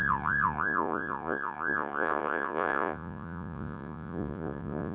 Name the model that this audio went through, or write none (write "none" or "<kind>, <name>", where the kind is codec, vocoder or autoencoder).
vocoder, Vocos